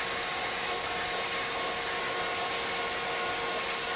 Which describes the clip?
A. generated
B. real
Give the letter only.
B